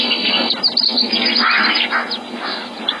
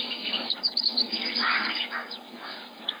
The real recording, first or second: first